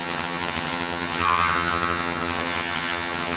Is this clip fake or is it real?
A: fake